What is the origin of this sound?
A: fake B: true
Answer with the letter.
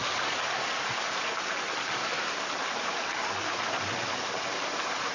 B